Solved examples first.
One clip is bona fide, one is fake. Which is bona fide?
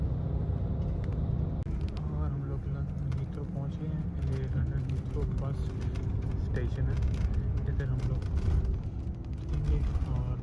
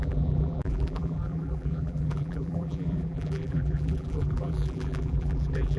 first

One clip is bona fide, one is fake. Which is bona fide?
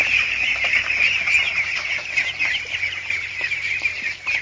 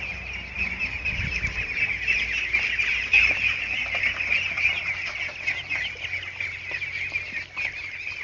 second